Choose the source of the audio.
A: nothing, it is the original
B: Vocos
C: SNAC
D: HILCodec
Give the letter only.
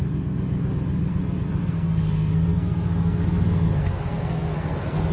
C